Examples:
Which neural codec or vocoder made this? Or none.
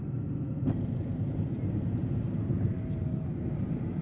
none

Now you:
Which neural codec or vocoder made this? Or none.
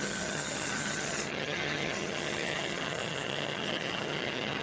vocoder, HiFi-GAN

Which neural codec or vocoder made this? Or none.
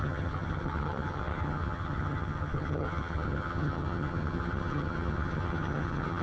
vocoder, HiFi-GAN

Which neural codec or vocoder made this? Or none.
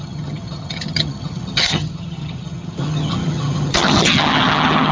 vocoder, HiFi-GAN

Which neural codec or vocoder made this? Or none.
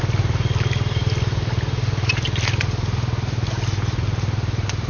none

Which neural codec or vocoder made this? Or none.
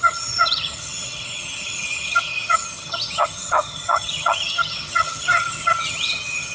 vocoder, HiFi-GAN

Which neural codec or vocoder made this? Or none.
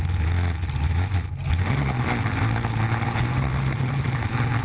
none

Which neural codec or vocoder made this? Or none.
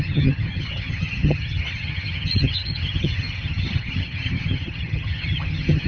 vocoder, HiFi-GAN